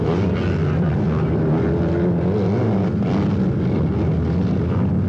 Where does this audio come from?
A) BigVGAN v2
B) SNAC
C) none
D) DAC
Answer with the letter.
C